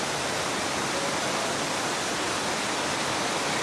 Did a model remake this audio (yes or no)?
no